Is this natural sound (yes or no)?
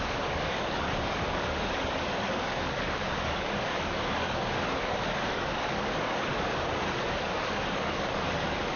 no